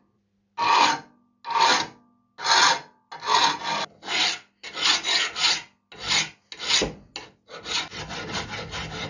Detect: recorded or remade recorded